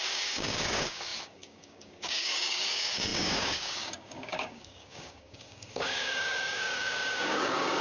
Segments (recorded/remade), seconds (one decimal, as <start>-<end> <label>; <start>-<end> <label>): 0.0-7.8 remade